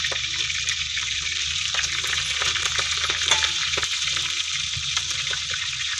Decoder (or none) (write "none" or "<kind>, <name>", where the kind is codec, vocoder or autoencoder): vocoder, BigVGAN v2